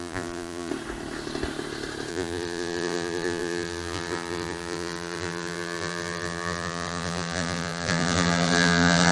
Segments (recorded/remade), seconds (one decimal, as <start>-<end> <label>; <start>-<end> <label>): 0.0-0.7 remade; 0.7-2.1 recorded; 2.1-9.1 remade